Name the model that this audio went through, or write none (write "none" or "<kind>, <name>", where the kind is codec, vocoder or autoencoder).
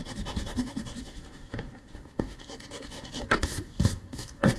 codec, SNAC